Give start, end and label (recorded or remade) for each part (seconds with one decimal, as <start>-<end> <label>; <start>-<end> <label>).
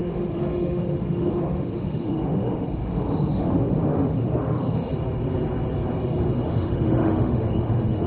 0.0-4.9 remade; 4.9-6.2 recorded; 6.2-8.1 remade